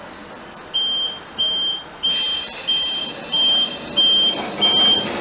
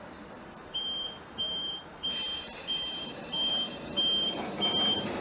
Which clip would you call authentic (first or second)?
first